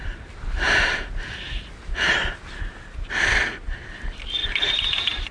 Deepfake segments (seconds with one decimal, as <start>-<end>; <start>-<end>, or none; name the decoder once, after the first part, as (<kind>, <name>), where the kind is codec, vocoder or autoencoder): 0.0-3.1 (vocoder, BigVGAN v2); 4.4-5.3